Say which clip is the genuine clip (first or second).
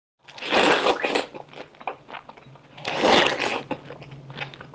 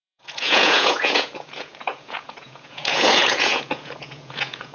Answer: first